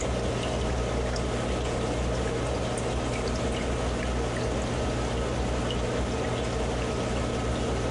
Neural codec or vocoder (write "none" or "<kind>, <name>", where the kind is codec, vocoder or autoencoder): none